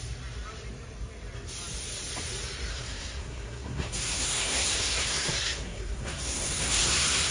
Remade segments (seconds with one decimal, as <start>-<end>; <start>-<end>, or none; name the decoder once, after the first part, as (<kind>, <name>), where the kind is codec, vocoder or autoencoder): 2.7-7.3 (codec, SNAC)